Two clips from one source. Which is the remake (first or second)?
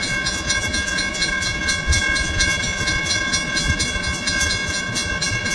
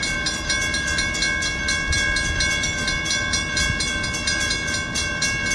first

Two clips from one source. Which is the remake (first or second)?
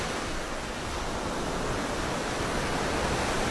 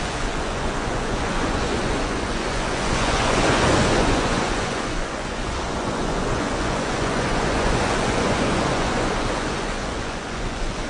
second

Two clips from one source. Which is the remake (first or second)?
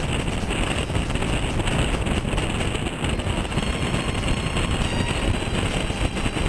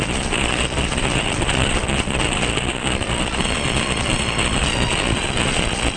second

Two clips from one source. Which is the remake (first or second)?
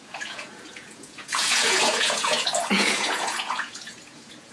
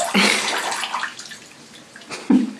first